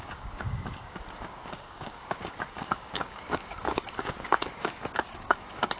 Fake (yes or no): yes